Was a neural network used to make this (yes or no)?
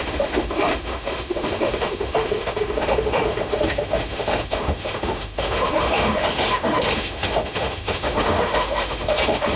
yes